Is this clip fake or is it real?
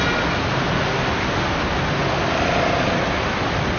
real